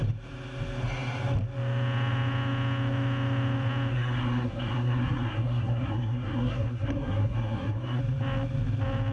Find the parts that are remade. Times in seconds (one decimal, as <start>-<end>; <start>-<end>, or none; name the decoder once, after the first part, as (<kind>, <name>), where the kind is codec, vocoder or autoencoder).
3.9-8.0 (codec, SNAC)